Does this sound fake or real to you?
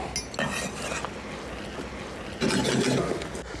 real